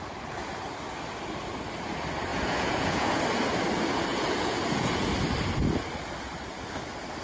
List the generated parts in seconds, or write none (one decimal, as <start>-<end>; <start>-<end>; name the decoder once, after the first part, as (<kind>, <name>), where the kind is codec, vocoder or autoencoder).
2.3-3.2 (vocoder, Vocos); 4.1-5.1